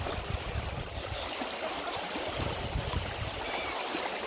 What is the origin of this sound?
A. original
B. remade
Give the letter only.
B